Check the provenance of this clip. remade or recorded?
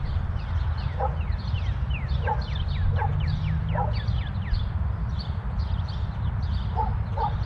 recorded